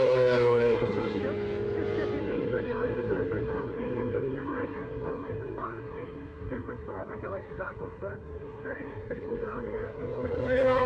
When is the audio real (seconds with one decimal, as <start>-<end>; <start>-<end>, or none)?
1.2-2.2